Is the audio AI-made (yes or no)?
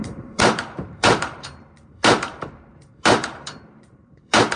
yes